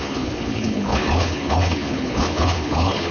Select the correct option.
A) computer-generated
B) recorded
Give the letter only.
A